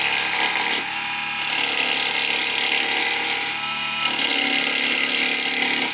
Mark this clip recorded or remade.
recorded